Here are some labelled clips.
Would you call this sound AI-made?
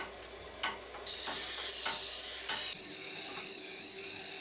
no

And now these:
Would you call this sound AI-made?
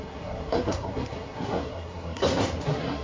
yes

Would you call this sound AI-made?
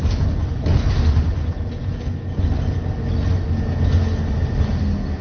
no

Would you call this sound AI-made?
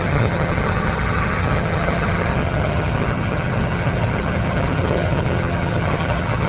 yes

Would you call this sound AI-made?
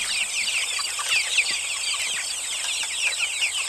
no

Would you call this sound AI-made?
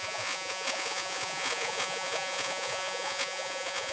yes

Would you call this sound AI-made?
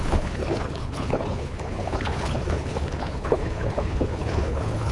yes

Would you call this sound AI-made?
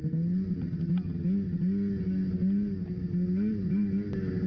no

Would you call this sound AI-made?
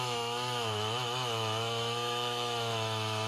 yes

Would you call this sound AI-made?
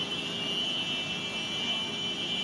no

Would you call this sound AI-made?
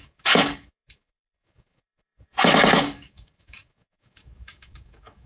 yes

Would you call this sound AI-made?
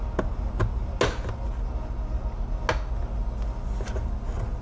no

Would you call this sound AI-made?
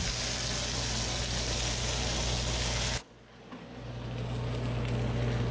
no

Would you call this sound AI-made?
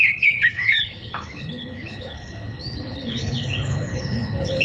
yes